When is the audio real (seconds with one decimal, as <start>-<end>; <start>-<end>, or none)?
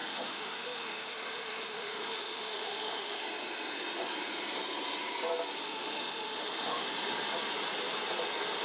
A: 3.2-5.6; 6.9-8.6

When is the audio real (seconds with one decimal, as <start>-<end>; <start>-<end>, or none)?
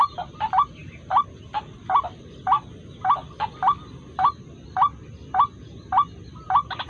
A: 0.0-6.9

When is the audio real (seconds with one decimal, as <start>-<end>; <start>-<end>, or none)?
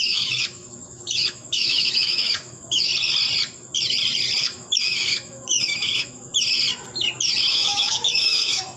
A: 2.9-4.4; 6.3-7.5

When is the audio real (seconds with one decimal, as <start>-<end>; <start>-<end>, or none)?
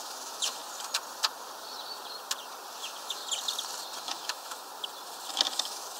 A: 0.6-2.8; 3.2-4.0; 4.7-5.3